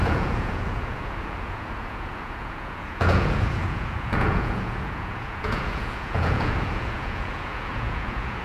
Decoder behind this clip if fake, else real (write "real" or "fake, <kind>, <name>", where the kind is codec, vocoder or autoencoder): fake, vocoder, Vocos